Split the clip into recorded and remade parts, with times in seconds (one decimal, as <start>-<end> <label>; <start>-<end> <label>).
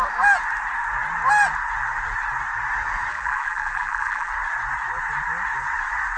0.0-3.1 recorded; 3.1-4.3 remade; 4.3-6.2 recorded